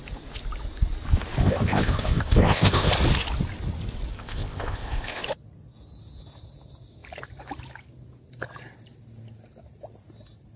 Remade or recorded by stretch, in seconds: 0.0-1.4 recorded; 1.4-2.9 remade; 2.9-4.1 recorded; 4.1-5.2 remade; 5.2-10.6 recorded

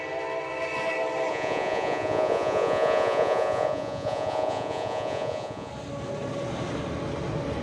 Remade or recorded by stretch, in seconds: 0.0-1.3 recorded; 1.3-5.7 remade; 5.7-7.6 recorded

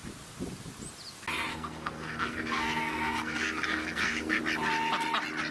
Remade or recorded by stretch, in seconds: 0.0-1.5 recorded; 1.5-4.4 remade; 4.4-5.5 recorded

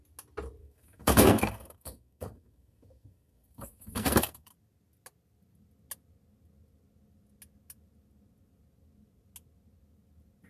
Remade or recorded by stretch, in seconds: 0.0-0.6 recorded; 0.6-4.5 remade; 4.5-10.5 recorded